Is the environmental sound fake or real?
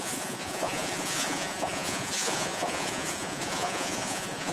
fake